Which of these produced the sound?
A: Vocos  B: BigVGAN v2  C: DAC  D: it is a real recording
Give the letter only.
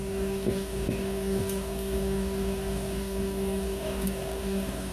C